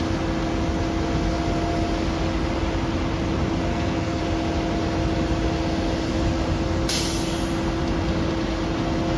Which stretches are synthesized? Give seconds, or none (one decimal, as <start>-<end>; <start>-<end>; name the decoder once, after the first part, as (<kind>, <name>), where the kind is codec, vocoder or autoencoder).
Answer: 3.7-4.2 (codec, SNAC)